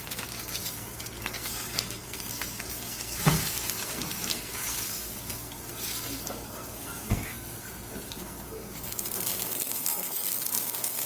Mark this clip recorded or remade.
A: remade